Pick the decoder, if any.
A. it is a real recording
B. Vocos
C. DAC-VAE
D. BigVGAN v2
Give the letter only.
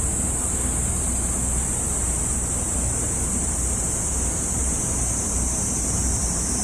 D